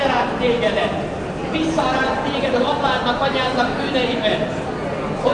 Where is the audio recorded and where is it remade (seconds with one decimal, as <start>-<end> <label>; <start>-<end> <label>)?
0.0-1.4 recorded; 1.4-2.8 remade; 2.8-5.3 recorded